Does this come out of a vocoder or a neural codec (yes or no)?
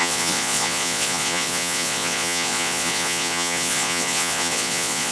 yes